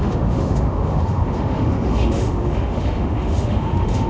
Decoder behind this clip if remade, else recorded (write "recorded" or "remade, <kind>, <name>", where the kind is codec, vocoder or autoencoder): remade, autoencoder, DAC-VAE